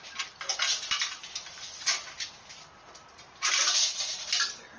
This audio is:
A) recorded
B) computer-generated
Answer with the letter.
A